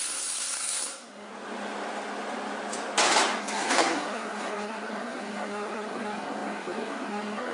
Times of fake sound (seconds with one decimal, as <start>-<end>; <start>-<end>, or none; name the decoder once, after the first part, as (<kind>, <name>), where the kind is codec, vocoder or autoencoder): 0.0-1.3 (codec, SNAC); 3.4-7.5